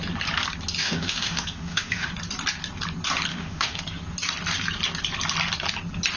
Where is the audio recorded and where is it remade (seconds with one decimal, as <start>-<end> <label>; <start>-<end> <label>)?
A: 0.0-0.8 recorded; 0.8-2.1 remade; 2.1-3.3 recorded; 3.3-3.8 remade; 3.8-6.2 recorded

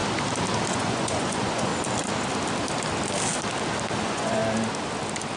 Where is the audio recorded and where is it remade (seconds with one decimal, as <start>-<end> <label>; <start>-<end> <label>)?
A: 0.0-0.7 recorded; 0.7-1.7 remade; 1.7-4.0 recorded; 4.0-4.4 remade; 4.4-5.4 recorded

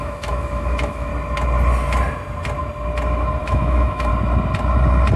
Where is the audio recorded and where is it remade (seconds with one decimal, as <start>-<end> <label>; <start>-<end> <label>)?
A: 0.0-1.1 remade; 1.1-3.4 recorded; 3.4-4.1 remade; 4.1-5.2 recorded

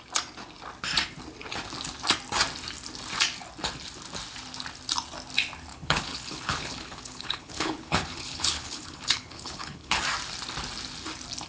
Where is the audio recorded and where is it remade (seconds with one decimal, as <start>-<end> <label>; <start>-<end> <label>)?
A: 0.0-5.7 recorded; 5.7-10.0 remade; 10.0-11.5 recorded